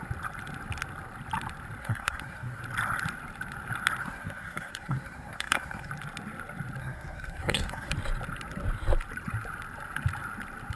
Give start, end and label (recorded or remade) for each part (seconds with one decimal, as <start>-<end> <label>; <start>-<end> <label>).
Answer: 0.0-1.8 recorded; 1.8-2.6 remade; 2.6-4.0 recorded; 4.0-5.9 remade; 5.9-6.8 recorded; 6.8-7.9 remade; 7.9-10.8 recorded